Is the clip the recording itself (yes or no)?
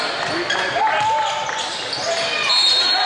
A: yes